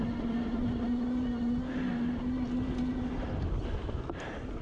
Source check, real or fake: real